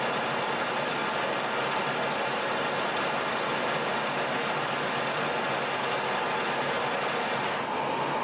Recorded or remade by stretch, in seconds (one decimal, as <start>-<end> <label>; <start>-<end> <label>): 0.0-8.2 recorded